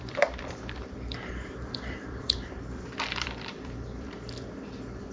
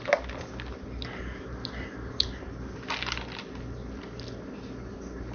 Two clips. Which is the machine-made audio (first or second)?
first